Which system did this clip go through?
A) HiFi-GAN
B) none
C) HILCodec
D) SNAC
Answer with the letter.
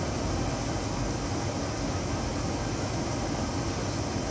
B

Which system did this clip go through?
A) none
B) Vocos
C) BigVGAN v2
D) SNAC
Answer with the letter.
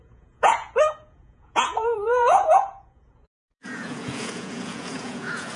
B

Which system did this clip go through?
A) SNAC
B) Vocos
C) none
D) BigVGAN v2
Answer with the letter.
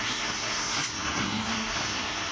A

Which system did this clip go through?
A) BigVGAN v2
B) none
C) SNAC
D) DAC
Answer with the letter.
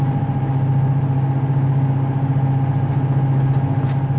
B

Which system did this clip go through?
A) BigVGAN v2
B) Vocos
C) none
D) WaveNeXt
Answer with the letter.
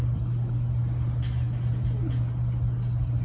C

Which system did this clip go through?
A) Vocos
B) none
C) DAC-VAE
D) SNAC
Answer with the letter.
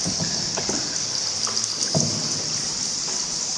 B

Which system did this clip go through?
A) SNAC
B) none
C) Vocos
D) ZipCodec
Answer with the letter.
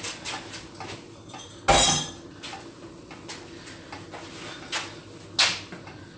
B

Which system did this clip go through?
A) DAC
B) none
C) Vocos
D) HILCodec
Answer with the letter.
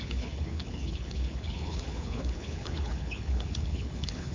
D